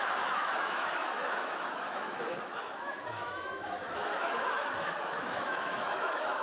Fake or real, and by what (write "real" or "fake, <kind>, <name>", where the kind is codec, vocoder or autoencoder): fake, autoencoder, DAC-VAE